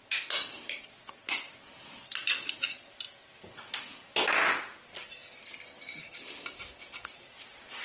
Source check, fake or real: real